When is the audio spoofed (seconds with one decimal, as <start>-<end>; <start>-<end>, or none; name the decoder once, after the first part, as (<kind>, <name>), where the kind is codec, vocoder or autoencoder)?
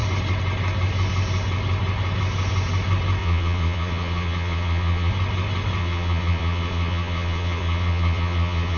3.2-5.1 (vocoder, Vocos); 5.8-8.8